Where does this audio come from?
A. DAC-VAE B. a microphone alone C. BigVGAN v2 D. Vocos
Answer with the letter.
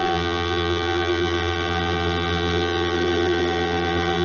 C